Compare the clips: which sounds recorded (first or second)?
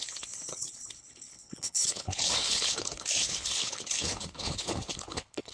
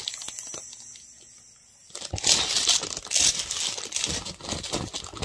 second